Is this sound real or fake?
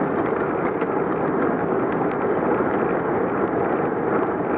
real